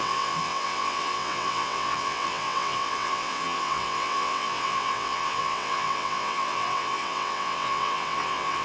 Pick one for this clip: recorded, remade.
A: remade